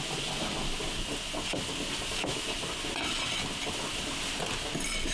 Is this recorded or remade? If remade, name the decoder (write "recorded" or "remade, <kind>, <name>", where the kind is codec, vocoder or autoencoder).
recorded